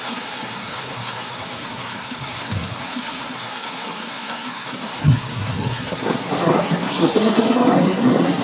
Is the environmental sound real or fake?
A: fake